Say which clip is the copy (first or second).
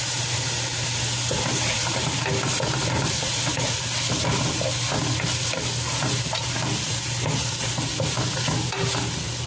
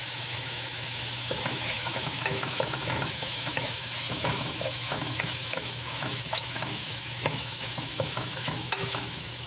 second